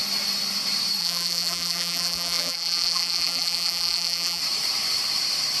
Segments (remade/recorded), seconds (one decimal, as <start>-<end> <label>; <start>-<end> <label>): 0.0-1.0 recorded; 1.0-4.4 remade; 4.4-5.6 recorded